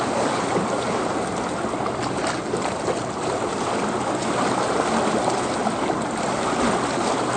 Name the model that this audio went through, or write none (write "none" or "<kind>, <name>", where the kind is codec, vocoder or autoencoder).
none